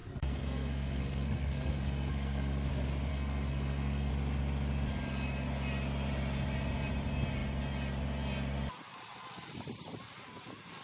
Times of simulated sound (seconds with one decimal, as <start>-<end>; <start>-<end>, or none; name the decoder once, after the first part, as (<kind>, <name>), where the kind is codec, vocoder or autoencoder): 0.0-2.7 (codec, SNAC); 3.1-4.1